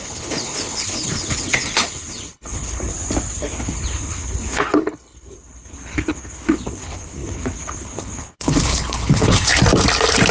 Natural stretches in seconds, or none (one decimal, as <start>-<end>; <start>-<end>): 2.9-3.4; 9.5-10.3